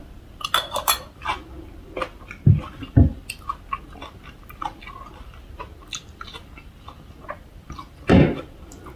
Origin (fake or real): real